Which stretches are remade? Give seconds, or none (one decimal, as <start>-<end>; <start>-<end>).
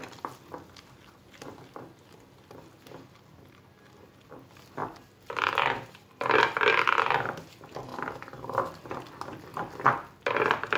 none